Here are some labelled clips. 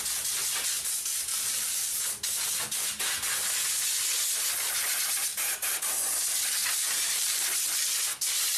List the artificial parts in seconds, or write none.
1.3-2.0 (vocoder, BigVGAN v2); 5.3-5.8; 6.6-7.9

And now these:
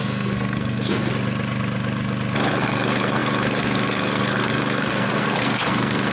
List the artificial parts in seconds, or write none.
0.0-1.1 (codec, SNAC); 2.5-6.1

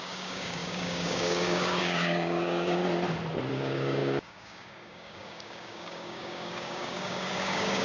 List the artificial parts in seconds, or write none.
0.0-2.8 (codec, DAC); 3.5-7.8

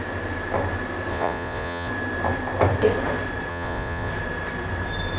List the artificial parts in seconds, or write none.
1.1-1.9 (vocoder, Vocos); 3.5-4.1

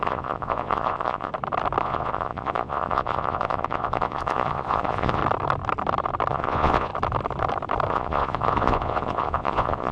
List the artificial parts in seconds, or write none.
0.0-1.3 (vocoder, Vocos); 1.8-5.2; 6.3-6.9; 7.9-9.9

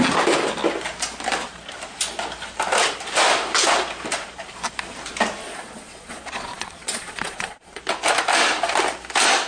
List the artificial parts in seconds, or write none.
5.4-7.8 (vocoder, Vocos)